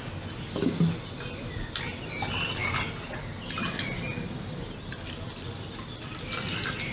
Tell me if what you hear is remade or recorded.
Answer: recorded